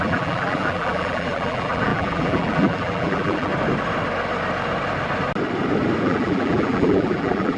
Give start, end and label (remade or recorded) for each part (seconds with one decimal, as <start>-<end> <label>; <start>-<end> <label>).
0.0-3.5 remade; 3.5-6.0 recorded; 6.0-7.6 remade